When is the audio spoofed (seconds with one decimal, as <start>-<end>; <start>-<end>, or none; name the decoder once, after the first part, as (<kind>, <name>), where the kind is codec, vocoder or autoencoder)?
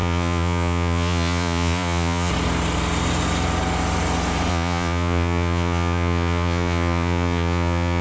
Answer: 0.0-2.3 (vocoder, Vocos); 4.5-8.0